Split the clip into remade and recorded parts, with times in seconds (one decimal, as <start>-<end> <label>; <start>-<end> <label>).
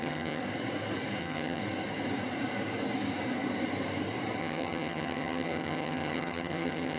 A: 0.0-0.4 remade; 0.4-1.2 recorded; 1.2-1.6 remade; 1.6-4.4 recorded; 4.4-7.0 remade